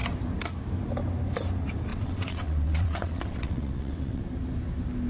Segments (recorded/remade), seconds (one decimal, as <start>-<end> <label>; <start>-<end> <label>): 0.0-1.9 recorded; 1.9-4.2 remade; 4.2-5.1 recorded